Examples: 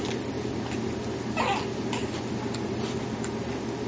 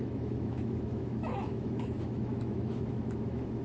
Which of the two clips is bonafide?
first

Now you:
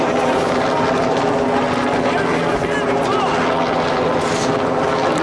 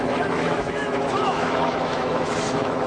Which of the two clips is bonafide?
first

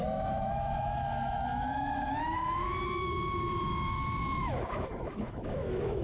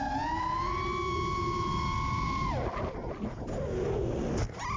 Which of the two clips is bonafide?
second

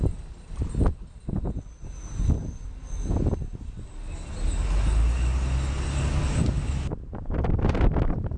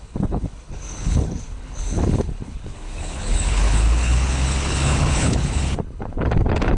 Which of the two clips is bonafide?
first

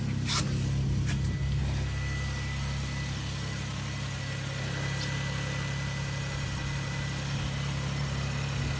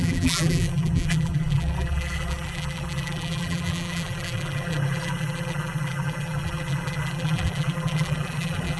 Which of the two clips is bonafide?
first